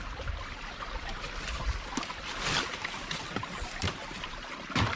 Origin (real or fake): real